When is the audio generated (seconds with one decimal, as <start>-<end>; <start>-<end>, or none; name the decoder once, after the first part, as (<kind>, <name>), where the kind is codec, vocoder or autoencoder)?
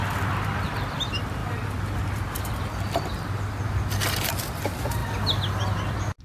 none